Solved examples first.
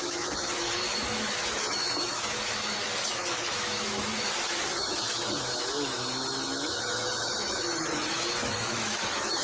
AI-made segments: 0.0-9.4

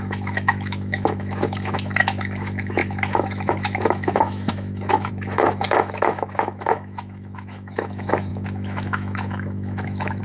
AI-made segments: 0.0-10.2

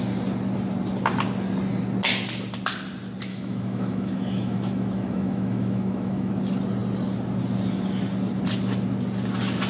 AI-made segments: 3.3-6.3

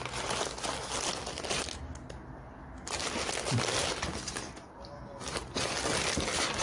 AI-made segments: none

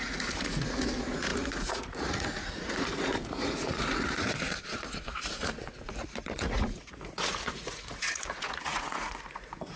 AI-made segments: 0.0-9.8

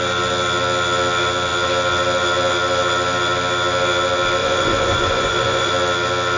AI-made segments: 4.4-5.7